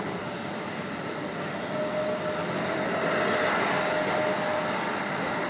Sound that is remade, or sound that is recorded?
recorded